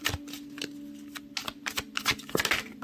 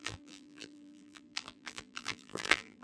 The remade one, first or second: second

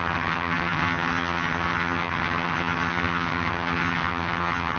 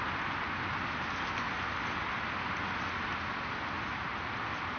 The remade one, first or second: first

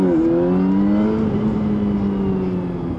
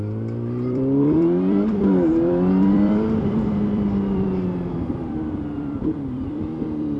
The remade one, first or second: second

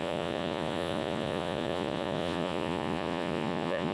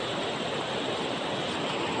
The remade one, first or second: first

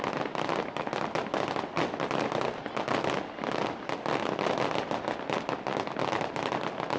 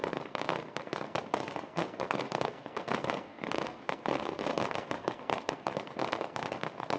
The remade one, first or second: second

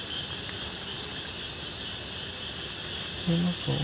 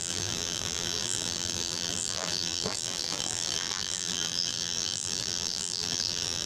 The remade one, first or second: second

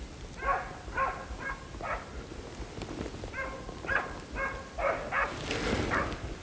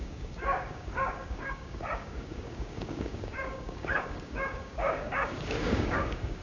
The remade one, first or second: second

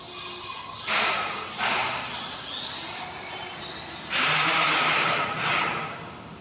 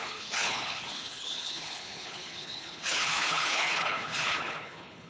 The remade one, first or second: second